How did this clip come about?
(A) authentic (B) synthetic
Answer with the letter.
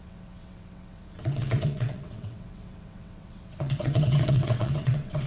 B